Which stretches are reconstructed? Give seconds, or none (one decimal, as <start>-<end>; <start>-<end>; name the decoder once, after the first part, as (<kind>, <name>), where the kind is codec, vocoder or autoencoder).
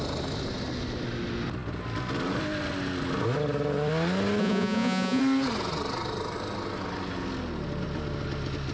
4.4-5.2 (vocoder, Vocos)